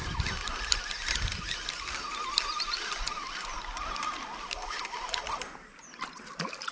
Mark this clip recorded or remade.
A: recorded